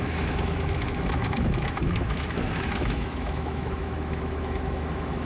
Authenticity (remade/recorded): remade